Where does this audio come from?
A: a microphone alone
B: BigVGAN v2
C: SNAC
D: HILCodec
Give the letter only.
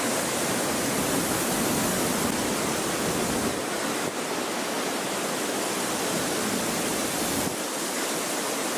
A